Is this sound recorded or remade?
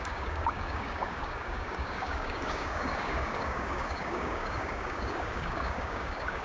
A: remade